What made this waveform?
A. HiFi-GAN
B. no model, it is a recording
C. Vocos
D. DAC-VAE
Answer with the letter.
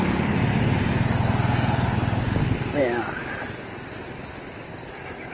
B